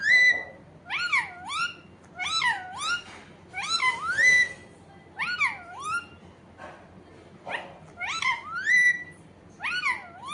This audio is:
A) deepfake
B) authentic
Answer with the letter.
B